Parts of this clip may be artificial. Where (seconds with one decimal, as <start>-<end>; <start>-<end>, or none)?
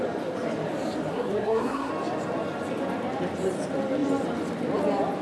1.1-1.9